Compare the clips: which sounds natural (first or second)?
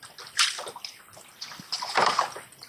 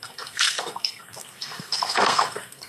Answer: first